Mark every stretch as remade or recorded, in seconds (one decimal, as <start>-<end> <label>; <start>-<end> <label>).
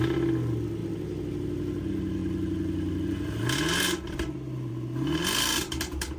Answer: 0.0-6.2 recorded